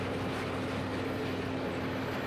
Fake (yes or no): no